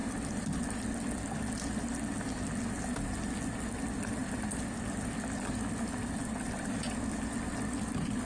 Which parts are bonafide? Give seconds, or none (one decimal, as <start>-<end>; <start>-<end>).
0.0-8.3